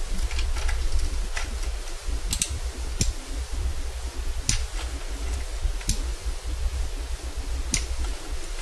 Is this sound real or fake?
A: real